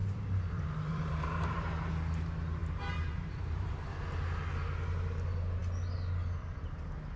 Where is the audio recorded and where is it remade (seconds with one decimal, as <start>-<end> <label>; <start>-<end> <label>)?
0.0-1.9 remade; 1.9-2.6 recorded; 2.6-3.7 remade; 3.7-7.2 recorded